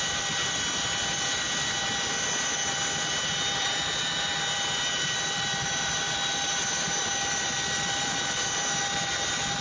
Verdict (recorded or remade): remade